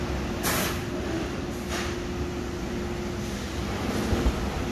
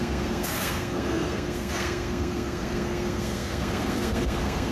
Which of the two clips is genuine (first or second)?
first